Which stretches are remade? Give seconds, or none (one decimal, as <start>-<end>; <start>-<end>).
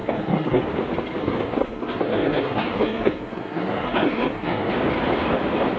0.0-0.6; 1.2-4.7